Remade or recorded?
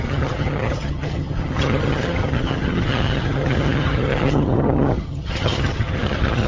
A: remade